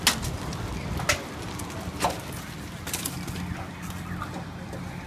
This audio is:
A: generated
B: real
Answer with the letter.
B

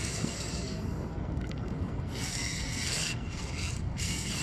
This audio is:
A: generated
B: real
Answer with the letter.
A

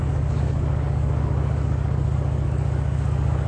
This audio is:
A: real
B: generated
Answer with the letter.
B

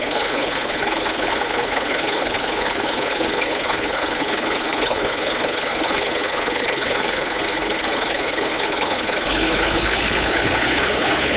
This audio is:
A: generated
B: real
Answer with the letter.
A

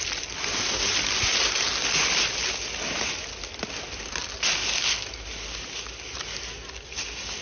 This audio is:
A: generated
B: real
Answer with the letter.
B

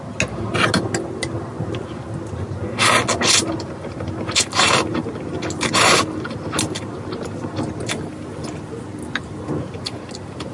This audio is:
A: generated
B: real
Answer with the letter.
B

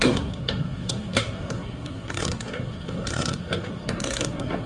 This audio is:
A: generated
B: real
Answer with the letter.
A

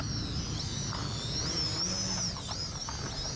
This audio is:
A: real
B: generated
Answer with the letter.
A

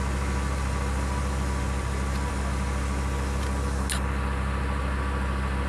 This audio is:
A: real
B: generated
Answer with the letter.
A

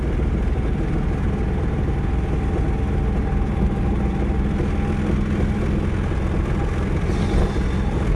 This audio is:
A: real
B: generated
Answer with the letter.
A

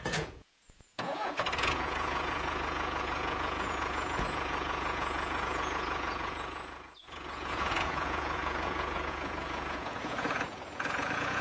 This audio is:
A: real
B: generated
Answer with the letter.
B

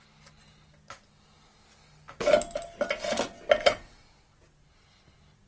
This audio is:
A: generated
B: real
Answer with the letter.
B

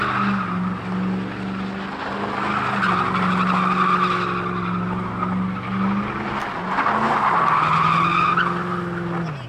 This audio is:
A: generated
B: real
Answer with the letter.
B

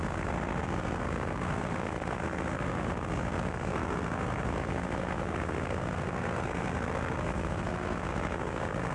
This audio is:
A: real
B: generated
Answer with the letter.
B